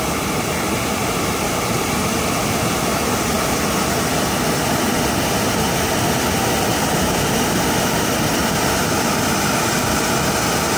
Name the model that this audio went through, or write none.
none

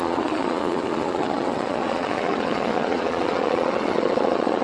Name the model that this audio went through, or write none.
vocoder, Vocos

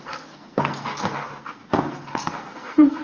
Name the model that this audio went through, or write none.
codec, SNAC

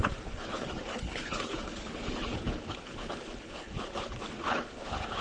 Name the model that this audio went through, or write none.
codec, HILCodec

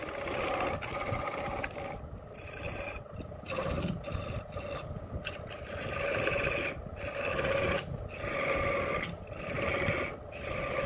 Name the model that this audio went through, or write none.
none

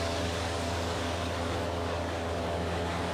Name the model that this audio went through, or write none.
codec, DAC